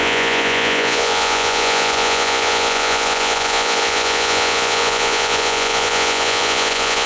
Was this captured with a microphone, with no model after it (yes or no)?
no